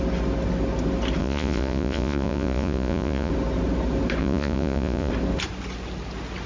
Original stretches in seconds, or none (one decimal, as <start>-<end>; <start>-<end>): 0.0-1.2; 3.3-4.2; 5.1-6.5